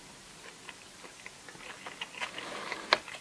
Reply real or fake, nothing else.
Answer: real